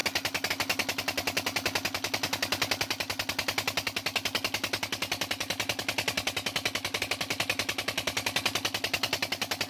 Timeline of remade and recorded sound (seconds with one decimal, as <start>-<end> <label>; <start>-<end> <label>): 0.0-9.7 recorded